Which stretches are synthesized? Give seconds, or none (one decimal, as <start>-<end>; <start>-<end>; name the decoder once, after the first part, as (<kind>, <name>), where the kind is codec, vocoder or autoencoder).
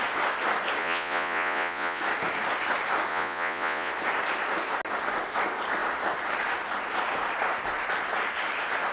0.8-2.0 (vocoder, Vocos); 3.1-3.9